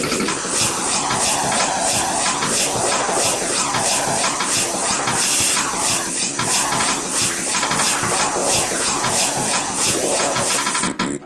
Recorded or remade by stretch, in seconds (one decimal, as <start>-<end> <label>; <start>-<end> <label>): 0.0-8.4 recorded; 8.4-10.5 remade; 10.5-11.3 recorded